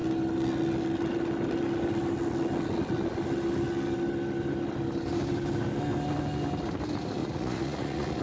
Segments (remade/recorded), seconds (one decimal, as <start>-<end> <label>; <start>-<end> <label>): 0.0-7.2 recorded; 7.2-8.2 remade